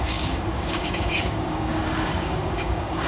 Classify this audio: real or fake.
fake